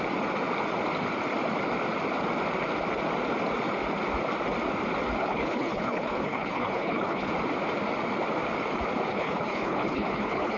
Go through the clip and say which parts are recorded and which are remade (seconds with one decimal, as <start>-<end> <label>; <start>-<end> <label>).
0.0-5.2 recorded; 5.2-7.3 remade; 7.3-9.1 recorded; 9.1-10.6 remade